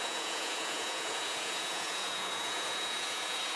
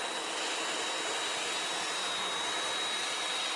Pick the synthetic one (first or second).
first